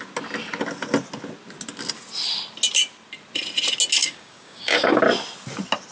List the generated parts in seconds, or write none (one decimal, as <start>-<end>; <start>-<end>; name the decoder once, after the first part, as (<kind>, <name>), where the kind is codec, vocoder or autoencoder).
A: 4.0-5.0 (codec, DAC)